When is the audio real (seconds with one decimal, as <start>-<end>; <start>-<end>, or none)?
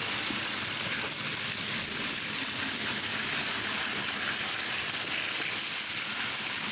0.0-6.7